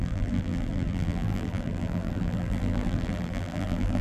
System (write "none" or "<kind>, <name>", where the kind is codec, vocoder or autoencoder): vocoder, BigVGAN v2